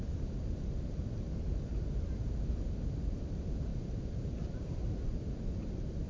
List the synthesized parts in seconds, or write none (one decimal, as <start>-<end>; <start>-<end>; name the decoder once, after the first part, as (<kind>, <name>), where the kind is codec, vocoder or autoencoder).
3.7-5.2 (vocoder, BigVGAN v2)